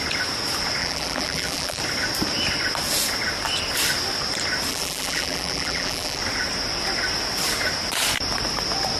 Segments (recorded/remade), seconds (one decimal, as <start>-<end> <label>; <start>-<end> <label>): 0.0-0.8 recorded; 0.8-1.8 remade; 1.8-4.7 recorded; 4.7-6.2 remade; 6.2-9.0 recorded